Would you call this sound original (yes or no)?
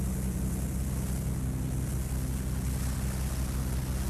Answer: yes